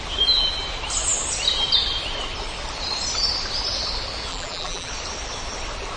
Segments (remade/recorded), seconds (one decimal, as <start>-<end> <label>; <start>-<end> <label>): 0.0-4.3 recorded; 4.3-4.9 remade; 4.9-6.0 recorded